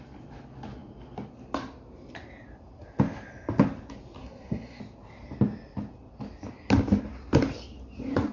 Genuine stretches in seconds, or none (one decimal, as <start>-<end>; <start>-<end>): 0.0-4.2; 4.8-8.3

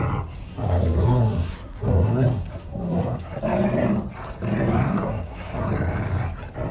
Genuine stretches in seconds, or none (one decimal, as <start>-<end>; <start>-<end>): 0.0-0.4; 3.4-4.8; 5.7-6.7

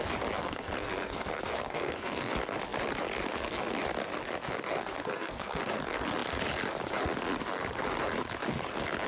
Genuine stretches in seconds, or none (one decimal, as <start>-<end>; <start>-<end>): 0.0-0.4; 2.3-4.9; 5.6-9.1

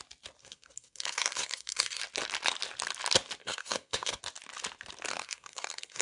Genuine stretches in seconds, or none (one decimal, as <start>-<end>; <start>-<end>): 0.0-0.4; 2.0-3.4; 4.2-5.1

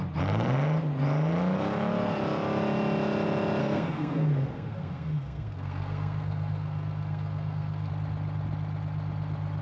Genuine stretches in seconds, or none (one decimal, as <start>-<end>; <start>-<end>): 0.0-3.6; 7.9-9.6

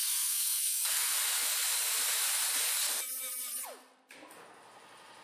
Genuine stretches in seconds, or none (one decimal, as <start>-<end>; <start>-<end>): 1.2-5.2